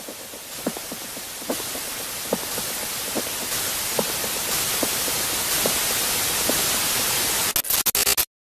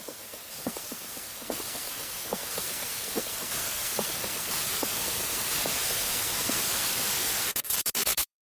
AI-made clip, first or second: second